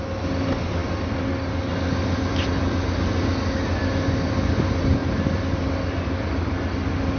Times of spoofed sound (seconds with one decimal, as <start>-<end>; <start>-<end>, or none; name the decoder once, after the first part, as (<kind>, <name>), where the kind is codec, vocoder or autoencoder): none